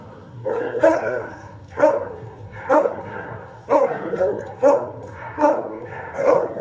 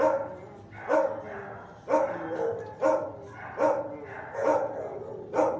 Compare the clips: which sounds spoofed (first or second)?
first